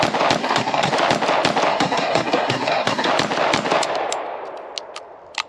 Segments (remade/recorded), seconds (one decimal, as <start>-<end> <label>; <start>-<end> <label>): 0.0-0.4 recorded; 0.4-0.9 remade; 0.9-1.7 recorded; 1.7-3.1 remade; 3.1-5.5 recorded